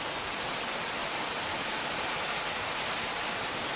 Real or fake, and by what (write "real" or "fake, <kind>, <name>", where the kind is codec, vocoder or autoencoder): real